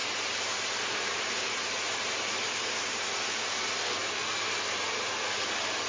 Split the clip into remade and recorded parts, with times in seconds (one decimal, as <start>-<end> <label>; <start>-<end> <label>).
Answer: 0.0-3.5 remade; 3.5-4.0 recorded; 4.0-5.9 remade

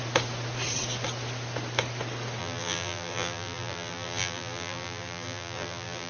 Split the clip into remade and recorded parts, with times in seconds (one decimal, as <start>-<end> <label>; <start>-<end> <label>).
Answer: 0.0-2.4 recorded; 2.4-6.1 remade

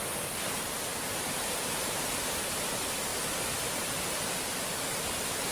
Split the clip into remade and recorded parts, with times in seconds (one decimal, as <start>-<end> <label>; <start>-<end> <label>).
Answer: 0.0-3.1 recorded; 3.1-3.9 remade; 3.9-5.5 recorded

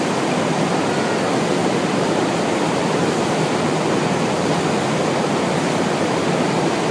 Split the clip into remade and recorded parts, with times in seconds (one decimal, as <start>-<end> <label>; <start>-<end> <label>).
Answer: 0.0-1.6 recorded; 1.6-4.6 remade; 4.6-6.9 recorded

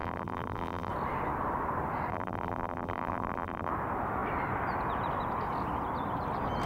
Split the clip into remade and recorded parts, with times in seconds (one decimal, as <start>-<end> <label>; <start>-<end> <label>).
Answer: 0.0-0.9 remade; 0.9-2.1 recorded; 2.1-3.7 remade; 3.7-6.7 recorded

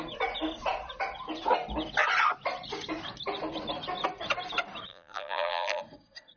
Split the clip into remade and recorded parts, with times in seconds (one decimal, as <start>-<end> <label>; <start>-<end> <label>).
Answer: 0.0-4.9 recorded; 4.9-5.8 remade; 5.8-6.4 recorded

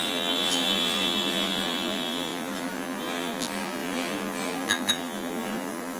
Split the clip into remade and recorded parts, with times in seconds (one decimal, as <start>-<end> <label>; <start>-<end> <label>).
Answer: 0.0-6.0 remade

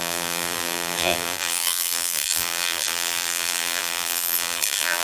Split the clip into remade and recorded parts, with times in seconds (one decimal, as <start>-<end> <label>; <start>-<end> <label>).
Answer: 0.0-5.0 remade